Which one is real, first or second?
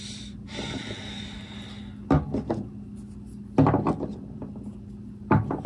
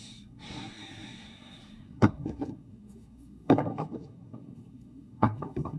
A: first